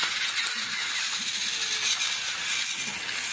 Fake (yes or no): no